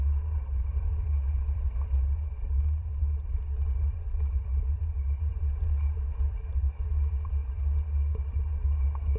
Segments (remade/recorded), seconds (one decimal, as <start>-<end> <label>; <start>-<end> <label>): 0.0-7.4 remade; 7.4-8.1 recorded; 8.1-9.2 remade